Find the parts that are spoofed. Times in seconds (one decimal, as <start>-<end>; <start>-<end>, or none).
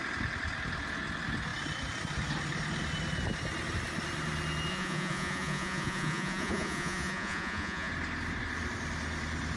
4.7-7.9